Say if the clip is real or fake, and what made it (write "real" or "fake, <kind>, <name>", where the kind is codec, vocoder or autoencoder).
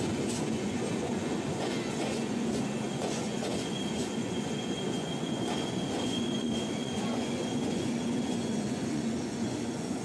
fake, vocoder, Vocos